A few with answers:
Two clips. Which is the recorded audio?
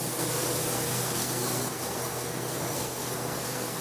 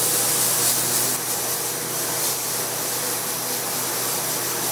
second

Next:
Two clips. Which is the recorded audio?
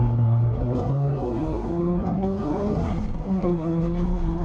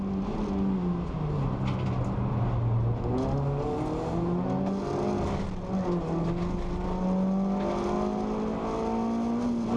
second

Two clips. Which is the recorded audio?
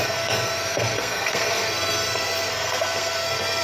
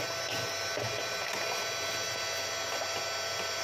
second